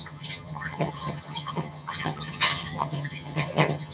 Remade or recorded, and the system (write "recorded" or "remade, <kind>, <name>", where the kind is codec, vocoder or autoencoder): remade, vocoder, HiFi-GAN